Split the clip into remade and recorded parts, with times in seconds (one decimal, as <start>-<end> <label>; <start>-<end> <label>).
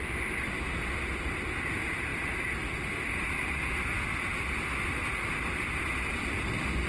0.0-6.9 recorded